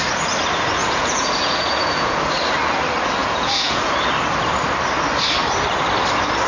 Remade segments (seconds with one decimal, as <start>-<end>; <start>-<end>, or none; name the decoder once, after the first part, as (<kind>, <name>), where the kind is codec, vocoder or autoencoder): 0.8-2.2 (vocoder, Vocos); 3.2-3.8